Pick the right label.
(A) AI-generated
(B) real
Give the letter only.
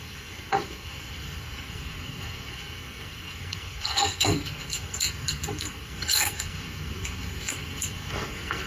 A